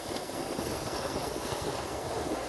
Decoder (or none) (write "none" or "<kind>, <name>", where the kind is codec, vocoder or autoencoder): codec, SNAC